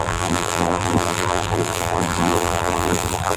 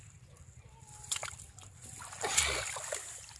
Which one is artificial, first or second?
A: first